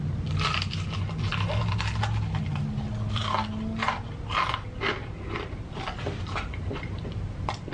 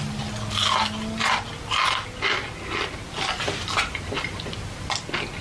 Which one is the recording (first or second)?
second